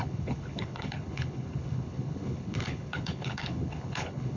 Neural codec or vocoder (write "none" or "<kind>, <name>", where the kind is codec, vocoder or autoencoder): codec, HILCodec